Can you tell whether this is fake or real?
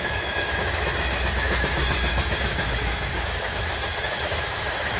fake